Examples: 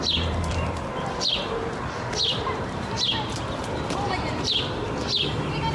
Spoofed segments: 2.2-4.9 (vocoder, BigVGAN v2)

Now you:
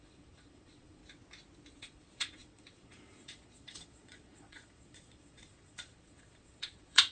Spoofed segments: 0.0-1.0 (vocoder, Vocos); 1.7-7.1

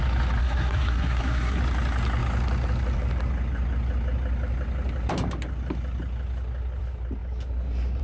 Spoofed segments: 0.4-1.6 (codec, SNAC)

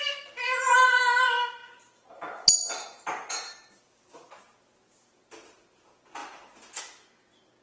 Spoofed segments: none

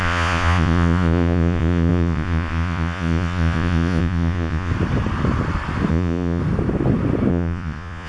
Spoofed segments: 0.0-4.7 (vocoder, Vocos); 5.9-6.4; 7.3-8.1

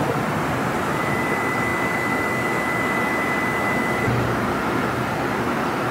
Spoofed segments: none

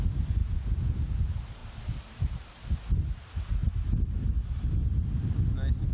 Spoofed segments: 0.4-1.2 (vocoder, Vocos)

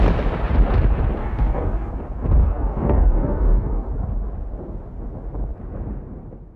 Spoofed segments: 1.2-1.9 (codec, DAC); 2.4-3.9